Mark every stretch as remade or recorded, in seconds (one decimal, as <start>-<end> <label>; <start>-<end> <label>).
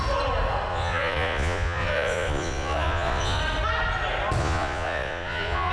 0.0-0.7 recorded; 0.7-3.4 remade; 3.4-4.4 recorded; 4.4-5.7 remade